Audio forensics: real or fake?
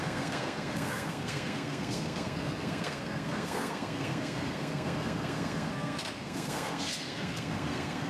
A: fake